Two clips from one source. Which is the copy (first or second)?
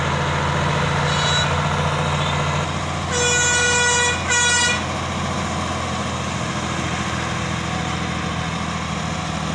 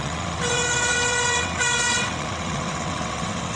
second